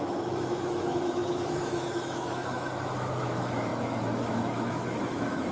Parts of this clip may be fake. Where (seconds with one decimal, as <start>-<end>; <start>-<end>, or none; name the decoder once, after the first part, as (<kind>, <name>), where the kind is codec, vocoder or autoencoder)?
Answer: 0.0-5.5 (autoencoder, DAC-VAE)